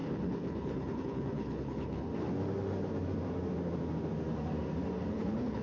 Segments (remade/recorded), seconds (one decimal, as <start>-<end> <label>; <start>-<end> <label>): 0.0-2.1 remade; 2.1-5.1 recorded; 5.1-5.6 remade